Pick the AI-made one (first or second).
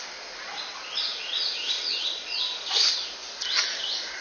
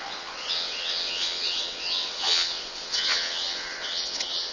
second